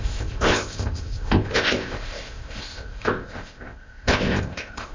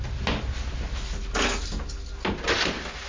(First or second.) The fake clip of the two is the first